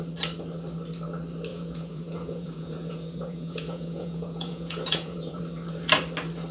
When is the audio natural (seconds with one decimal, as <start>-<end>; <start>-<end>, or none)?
0.0-1.5; 5.4-6.5